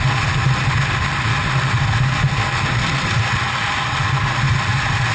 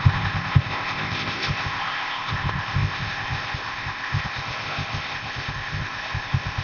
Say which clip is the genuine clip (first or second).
first